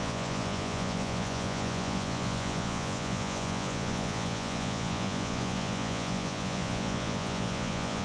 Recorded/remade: remade